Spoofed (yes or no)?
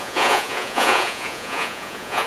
yes